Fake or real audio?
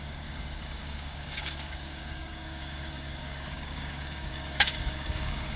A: fake